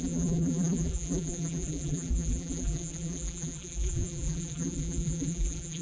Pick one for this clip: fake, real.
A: fake